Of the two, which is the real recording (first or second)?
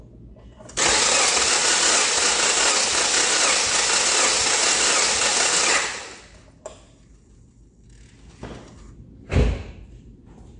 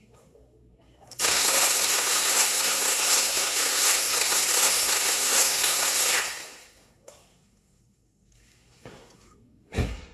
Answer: first